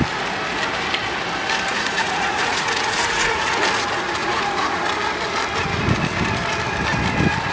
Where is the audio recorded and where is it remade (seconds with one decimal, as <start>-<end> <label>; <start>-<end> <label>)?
0.0-1.7 recorded; 1.7-3.6 remade; 3.6-4.2 recorded; 4.2-4.8 remade; 4.8-7.5 recorded